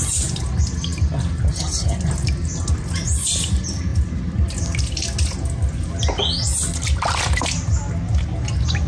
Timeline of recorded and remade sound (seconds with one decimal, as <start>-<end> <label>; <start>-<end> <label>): 0.0-8.9 recorded